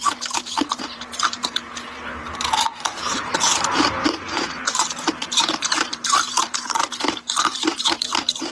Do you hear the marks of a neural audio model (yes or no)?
yes